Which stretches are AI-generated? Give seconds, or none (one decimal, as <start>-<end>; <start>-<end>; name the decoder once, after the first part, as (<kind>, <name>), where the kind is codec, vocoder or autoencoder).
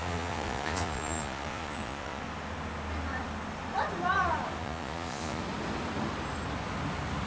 0.0-2.2 (vocoder, Vocos); 4.6-5.4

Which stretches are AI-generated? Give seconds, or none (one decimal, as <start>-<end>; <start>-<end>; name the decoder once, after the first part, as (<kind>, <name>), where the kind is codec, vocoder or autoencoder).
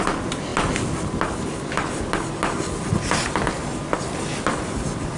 none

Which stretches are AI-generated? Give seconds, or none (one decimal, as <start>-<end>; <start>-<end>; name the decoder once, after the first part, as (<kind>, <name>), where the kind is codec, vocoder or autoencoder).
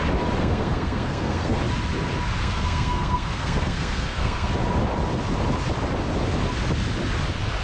0.4-1.6 (codec, SNAC); 2.4-4.5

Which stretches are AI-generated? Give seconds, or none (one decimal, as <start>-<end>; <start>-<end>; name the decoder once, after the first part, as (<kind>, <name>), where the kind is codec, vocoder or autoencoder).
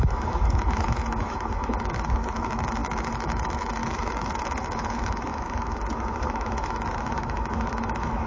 0.0-8.3 (autoencoder, DAC-VAE)